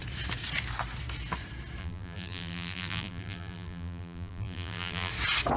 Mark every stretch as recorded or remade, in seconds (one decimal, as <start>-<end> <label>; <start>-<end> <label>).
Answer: 0.0-1.8 recorded; 1.8-5.1 remade; 5.1-5.6 recorded